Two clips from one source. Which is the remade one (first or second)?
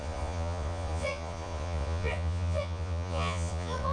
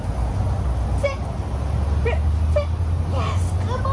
first